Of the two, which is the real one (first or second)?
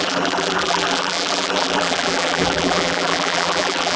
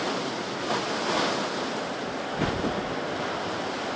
second